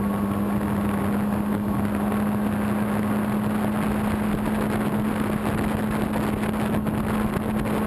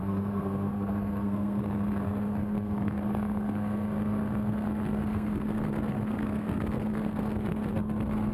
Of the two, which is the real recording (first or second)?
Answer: first